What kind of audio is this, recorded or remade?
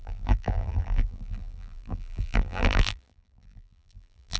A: remade